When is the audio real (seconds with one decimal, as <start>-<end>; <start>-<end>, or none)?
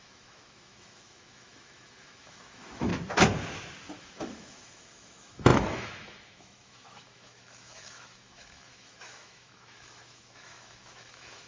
2.9-4.0